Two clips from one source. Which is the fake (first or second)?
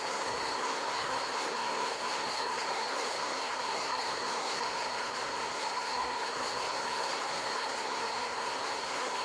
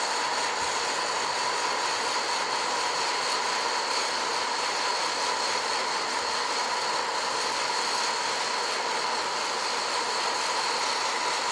first